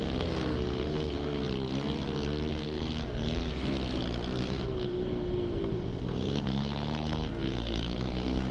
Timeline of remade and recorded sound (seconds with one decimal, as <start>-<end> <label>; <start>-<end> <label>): 0.0-1.4 remade; 1.4-2.5 recorded; 2.5-3.6 remade; 3.6-4.4 recorded; 4.4-8.5 remade